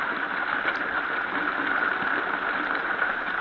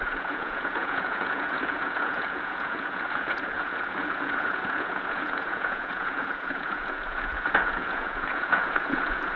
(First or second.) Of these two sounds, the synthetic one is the second